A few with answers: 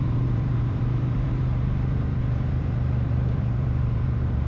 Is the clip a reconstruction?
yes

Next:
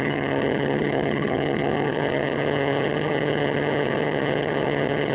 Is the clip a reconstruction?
yes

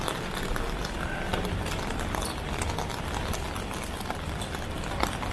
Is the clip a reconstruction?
no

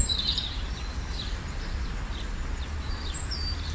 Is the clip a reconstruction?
yes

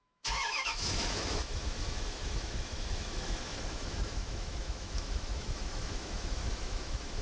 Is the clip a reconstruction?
yes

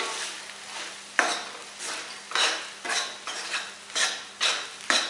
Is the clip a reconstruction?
yes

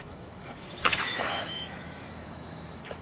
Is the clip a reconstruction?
yes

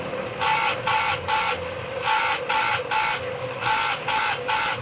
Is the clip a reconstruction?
no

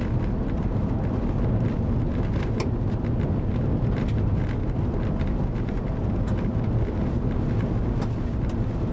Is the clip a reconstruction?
no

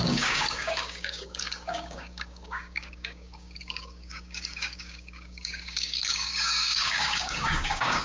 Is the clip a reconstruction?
yes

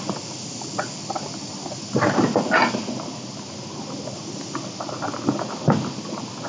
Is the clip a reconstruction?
no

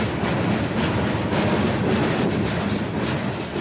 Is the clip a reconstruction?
no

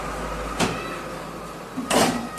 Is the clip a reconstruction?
no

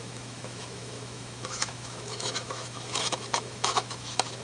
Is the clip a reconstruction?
yes